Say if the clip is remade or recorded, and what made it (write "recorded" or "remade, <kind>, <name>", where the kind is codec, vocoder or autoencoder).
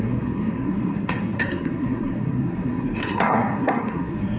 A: remade, codec, SNAC